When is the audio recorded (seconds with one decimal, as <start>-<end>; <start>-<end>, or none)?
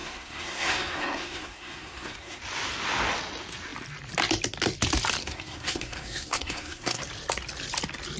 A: 2.4-5.2; 7.0-8.2